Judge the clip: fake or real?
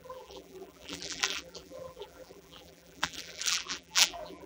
fake